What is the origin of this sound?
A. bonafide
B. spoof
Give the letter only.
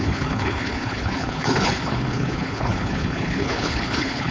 B